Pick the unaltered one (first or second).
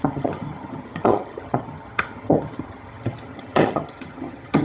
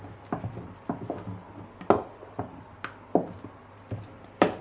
second